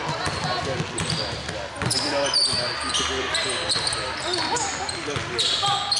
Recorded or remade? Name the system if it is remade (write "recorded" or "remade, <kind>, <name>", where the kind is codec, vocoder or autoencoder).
recorded